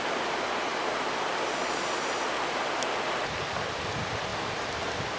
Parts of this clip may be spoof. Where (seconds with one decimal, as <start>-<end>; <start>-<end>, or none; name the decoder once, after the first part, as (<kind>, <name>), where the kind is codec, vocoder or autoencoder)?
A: none